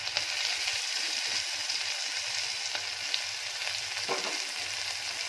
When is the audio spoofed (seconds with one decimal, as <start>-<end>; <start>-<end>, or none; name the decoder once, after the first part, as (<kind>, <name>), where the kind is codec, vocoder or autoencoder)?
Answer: 0.7-1.8 (vocoder, BigVGAN v2); 3.6-4.6